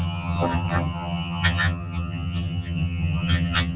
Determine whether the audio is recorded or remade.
remade